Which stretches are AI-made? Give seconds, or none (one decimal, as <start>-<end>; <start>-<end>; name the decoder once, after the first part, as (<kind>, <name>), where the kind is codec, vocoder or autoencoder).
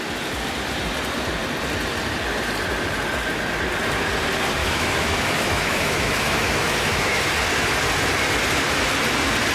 4.6-7.3 (autoencoder, DAC-VAE)